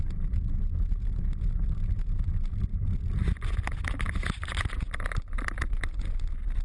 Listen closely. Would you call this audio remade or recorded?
recorded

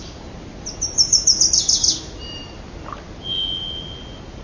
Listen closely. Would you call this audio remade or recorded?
recorded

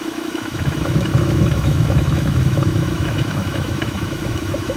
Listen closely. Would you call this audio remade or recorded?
remade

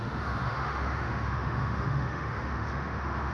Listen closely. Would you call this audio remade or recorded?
remade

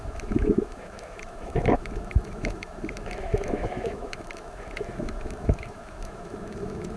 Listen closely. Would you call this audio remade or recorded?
remade